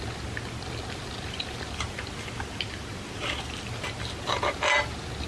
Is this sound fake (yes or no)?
no